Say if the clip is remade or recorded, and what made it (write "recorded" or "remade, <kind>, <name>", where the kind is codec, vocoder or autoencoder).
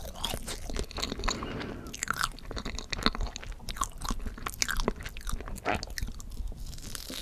recorded